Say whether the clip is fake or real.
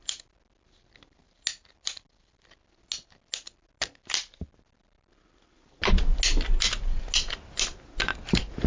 real